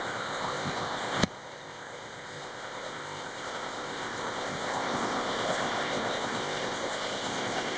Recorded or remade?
remade